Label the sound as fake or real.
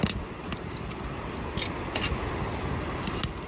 real